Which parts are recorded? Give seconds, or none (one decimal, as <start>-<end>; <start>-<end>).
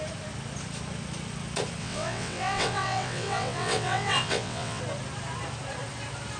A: 0.0-1.8; 4.8-6.4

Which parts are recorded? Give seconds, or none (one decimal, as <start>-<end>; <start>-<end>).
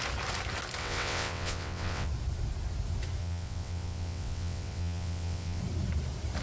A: 0.0-0.8; 2.1-3.2; 5.6-6.4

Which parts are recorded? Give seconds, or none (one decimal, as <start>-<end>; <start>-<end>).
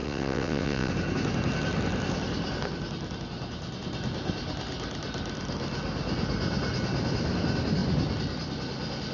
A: 0.9-9.1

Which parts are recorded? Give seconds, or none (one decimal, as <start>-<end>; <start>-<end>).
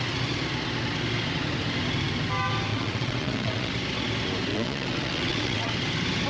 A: 0.0-2.7; 3.7-4.5; 5.7-6.3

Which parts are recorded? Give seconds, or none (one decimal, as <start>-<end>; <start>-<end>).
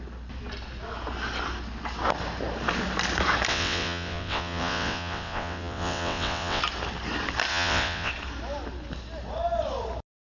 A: 0.0-3.5; 6.6-7.5; 8.1-10.3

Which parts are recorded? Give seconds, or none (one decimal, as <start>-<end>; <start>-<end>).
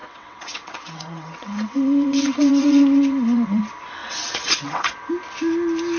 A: 3.6-4.0; 4.9-6.0